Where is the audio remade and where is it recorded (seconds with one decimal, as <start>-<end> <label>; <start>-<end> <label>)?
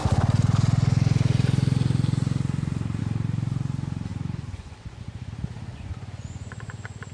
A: 0.0-4.1 recorded; 4.1-5.3 remade; 5.3-5.7 recorded; 5.7-7.1 remade